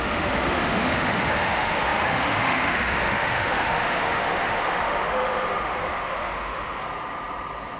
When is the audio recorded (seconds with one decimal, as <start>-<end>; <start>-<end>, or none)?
6.8-7.8